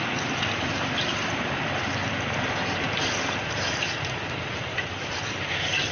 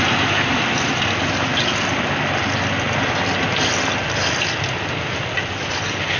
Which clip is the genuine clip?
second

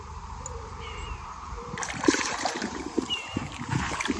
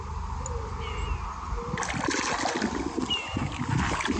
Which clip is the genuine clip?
second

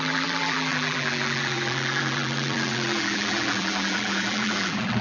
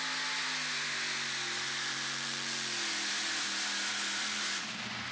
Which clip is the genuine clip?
second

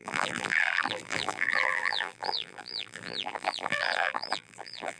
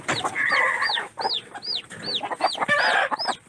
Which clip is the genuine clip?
second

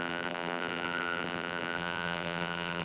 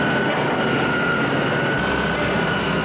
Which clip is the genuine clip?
second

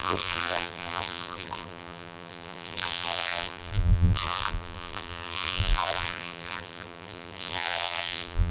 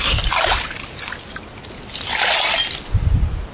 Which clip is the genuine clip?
second